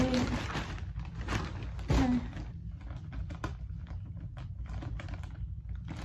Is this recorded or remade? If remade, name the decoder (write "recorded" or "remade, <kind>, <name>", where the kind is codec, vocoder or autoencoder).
recorded